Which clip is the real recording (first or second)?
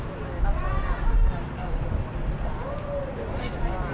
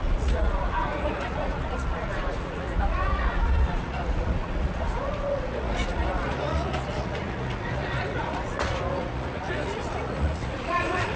first